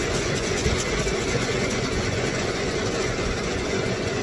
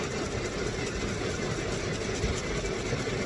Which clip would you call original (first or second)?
second